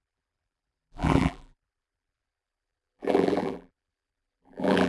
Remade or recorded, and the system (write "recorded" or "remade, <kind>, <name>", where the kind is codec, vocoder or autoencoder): remade, vocoder, BigVGAN v2